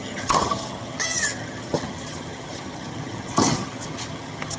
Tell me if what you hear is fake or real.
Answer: fake